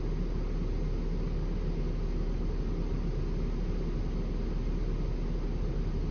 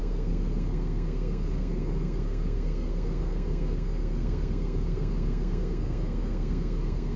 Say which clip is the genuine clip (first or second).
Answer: first